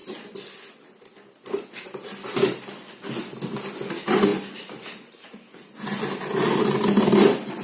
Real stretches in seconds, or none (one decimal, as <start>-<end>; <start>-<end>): 0.0-7.6